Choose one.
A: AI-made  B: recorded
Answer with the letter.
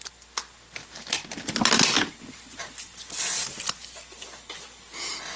B